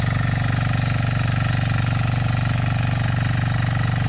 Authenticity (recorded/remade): recorded